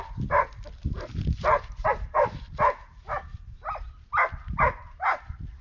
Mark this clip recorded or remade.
recorded